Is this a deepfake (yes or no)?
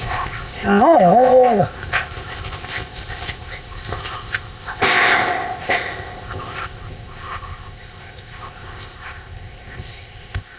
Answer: yes